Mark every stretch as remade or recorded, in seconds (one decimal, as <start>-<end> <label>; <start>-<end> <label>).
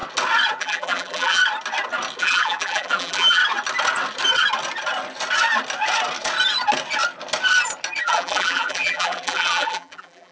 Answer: 0.0-0.6 recorded; 0.6-1.4 remade; 1.4-2.2 recorded; 2.2-3.4 remade; 3.4-8.0 recorded; 8.0-10.3 remade